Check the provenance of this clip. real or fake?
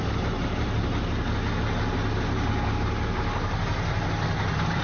real